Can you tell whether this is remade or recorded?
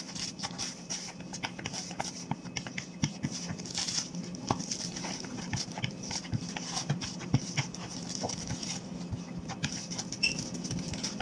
recorded